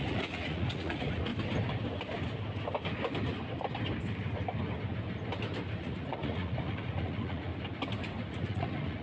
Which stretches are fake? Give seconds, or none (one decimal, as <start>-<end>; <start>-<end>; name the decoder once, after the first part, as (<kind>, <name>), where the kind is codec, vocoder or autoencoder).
0.0-1.3 (vocoder, Vocos); 5.8-7.5; 8.3-9.0